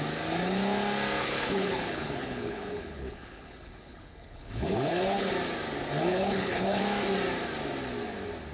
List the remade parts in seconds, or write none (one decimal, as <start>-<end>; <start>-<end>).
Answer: 1.2-5.3; 6.1-6.8